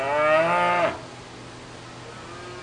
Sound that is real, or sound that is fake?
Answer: real